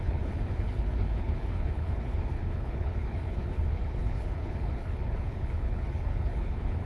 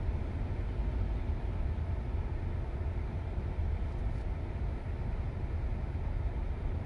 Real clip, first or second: second